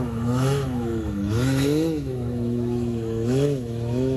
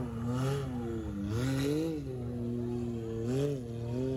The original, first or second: second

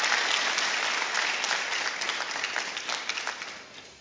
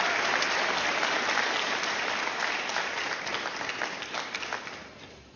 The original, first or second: first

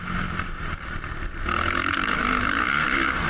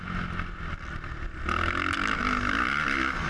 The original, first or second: second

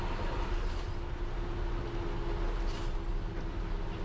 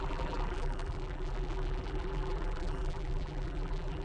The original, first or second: first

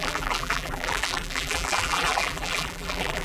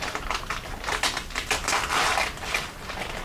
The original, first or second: second